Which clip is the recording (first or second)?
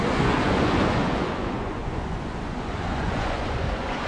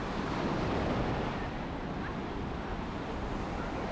second